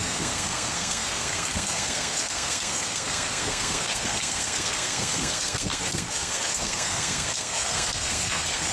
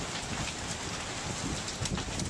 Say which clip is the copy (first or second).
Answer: first